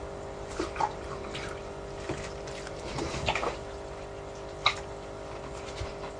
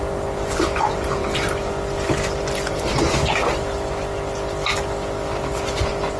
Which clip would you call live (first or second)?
second